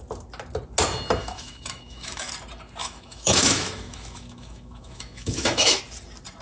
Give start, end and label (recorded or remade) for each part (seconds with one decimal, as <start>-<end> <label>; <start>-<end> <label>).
0.0-1.2 recorded; 1.2-2.3 remade; 2.3-2.8 recorded; 2.8-5.8 remade; 5.8-6.4 recorded